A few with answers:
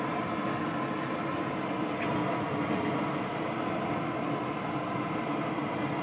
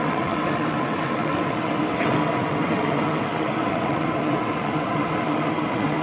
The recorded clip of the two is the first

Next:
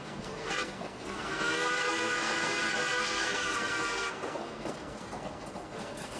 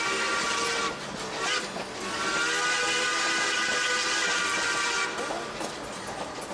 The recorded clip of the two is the second